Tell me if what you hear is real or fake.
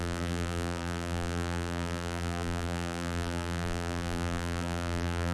fake